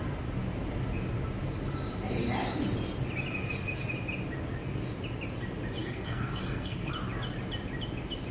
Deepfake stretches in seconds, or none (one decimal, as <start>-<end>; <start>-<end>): 5.8-6.9